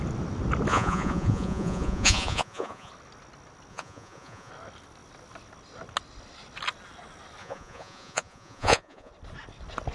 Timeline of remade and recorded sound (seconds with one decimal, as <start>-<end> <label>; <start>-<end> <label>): 0.0-0.7 recorded; 0.7-2.9 remade; 2.9-3.7 recorded; 3.7-4.5 remade; 4.5-7.4 recorded; 7.4-9.1 remade; 9.1-9.9 recorded